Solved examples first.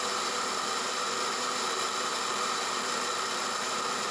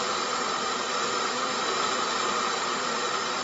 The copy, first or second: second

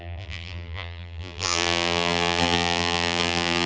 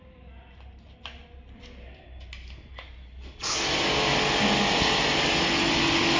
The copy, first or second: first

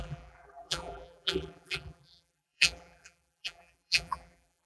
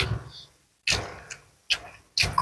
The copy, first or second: first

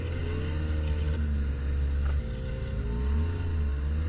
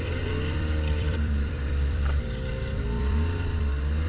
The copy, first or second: second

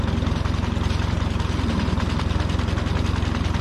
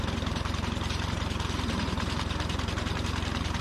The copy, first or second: second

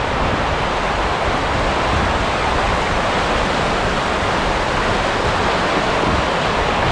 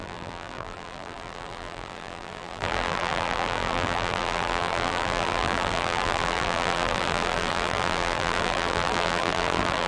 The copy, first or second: second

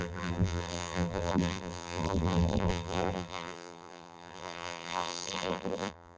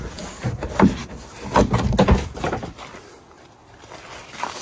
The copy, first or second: first